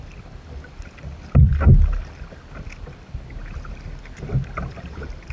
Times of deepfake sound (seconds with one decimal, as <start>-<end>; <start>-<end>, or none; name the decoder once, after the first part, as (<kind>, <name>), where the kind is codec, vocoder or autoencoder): none